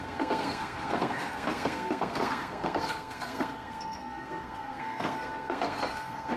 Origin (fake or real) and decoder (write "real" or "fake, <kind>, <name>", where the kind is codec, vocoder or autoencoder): fake, codec, SNAC